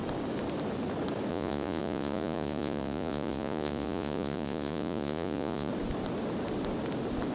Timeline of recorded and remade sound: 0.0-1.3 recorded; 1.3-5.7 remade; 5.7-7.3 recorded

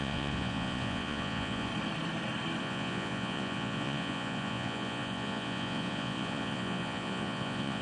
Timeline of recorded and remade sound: 0.0-1.7 remade; 1.7-2.6 recorded; 2.6-7.8 remade